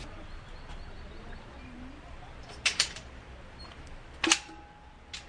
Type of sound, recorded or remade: recorded